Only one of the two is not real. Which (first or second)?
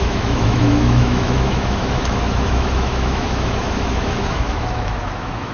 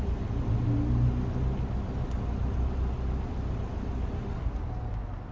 first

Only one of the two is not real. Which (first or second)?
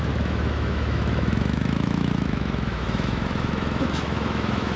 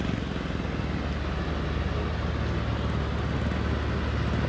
first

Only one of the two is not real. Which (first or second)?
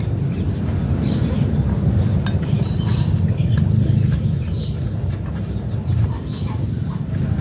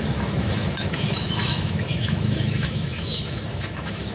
second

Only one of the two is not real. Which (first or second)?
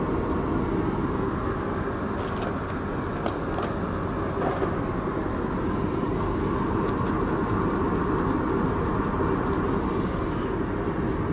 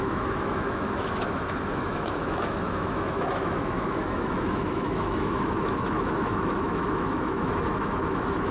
second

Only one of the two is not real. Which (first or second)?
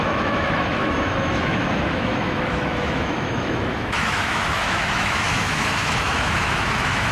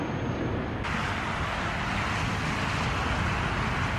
first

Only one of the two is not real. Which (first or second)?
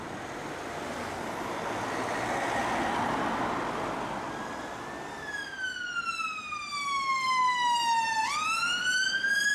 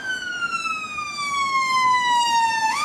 second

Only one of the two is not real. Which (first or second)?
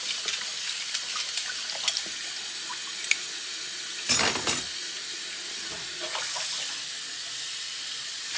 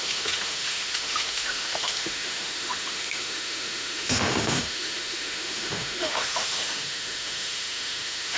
second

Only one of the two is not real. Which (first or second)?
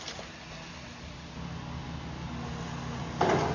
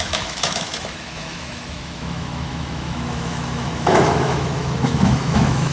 second